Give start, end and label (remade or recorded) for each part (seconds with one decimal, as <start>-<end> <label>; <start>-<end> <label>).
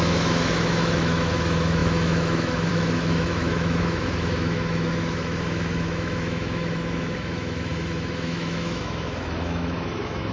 0.0-10.3 remade